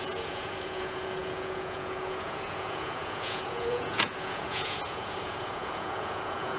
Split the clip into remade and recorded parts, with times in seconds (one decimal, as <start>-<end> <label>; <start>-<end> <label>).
0.0-6.6 remade